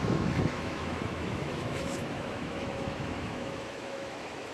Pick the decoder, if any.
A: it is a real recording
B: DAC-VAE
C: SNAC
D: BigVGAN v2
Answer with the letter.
B